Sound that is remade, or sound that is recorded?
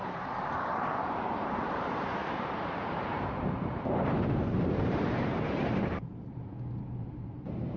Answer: remade